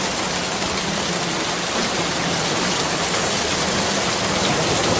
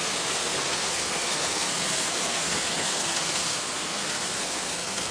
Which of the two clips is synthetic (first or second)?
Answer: second